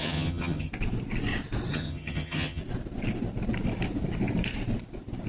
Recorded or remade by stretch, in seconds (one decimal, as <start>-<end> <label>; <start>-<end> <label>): 0.0-0.7 remade; 0.7-1.7 recorded; 1.7-2.6 remade; 2.6-5.3 recorded

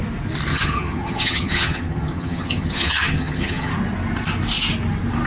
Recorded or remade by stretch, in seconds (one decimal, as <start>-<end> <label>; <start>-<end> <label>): 0.0-0.5 recorded; 0.5-3.7 remade; 3.7-5.3 recorded

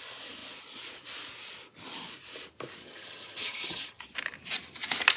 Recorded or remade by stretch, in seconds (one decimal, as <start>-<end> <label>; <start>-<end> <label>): 0.0-2.8 recorded; 2.8-4.0 remade; 4.0-5.2 recorded

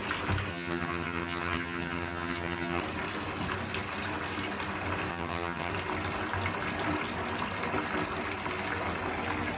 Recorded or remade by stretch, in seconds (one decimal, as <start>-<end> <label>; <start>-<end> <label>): 0.0-0.5 recorded; 0.5-2.8 remade; 2.8-5.1 recorded; 5.1-5.7 remade; 5.7-9.6 recorded

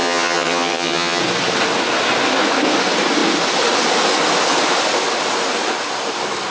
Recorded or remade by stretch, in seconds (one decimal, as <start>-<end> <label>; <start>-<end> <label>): 0.0-1.2 remade; 1.2-6.5 recorded

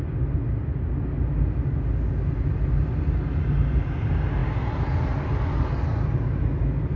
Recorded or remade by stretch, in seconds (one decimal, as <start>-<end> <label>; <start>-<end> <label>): 0.0-7.0 recorded

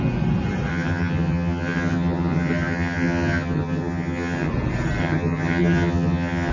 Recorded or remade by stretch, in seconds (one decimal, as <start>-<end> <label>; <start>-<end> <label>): 0.0-0.7 recorded; 0.7-4.5 remade; 4.5-5.0 recorded; 5.0-6.5 remade